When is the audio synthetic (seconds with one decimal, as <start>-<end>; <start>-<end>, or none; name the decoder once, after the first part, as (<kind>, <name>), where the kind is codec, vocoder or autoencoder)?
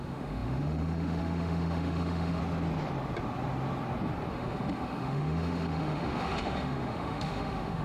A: 0.0-2.4 (autoencoder, DAC-VAE); 4.3-7.8